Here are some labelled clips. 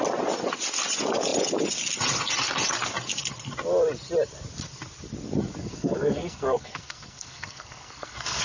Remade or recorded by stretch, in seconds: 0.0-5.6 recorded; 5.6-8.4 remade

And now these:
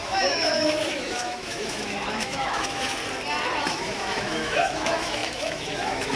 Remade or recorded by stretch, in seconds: 0.0-3.0 remade; 3.0-3.7 recorded; 3.7-6.2 remade

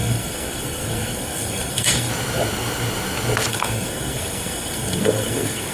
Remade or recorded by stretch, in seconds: 0.0-2.1 remade; 2.1-3.5 recorded; 3.5-5.7 remade

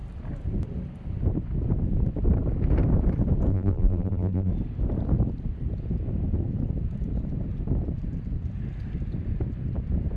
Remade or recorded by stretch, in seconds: 0.0-3.5 recorded; 3.5-4.5 remade; 4.5-10.2 recorded

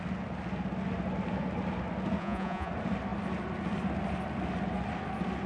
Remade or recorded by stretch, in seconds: 0.0-2.2 recorded; 2.2-2.7 remade; 2.7-5.5 recorded

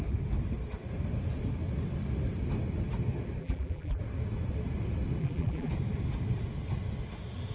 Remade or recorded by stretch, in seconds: 0.0-3.4 recorded; 3.4-4.0 remade; 4.0-5.2 recorded; 5.2-5.7 remade; 5.7-7.5 recorded

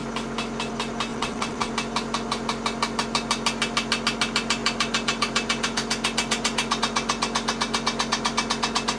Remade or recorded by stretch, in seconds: 0.0-1.1 recorded; 1.1-1.7 remade; 1.7-9.0 recorded